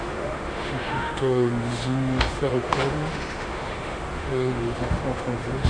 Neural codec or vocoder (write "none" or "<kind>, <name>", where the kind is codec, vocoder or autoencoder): autoencoder, DAC-VAE